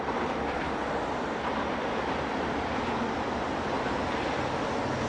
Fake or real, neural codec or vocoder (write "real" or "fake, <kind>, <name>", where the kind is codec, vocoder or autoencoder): real